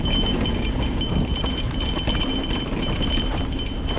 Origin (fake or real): real